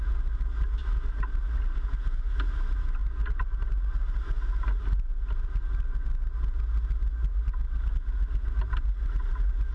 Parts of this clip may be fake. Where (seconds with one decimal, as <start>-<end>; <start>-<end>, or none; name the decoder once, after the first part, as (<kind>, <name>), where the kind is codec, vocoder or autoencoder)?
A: none